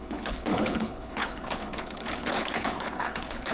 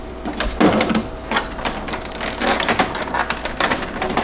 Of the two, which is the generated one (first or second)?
first